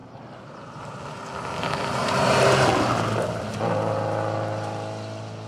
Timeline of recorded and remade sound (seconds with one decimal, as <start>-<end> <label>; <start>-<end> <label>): 0.0-1.0 remade; 1.0-2.0 recorded; 2.0-2.7 remade; 2.7-5.5 recorded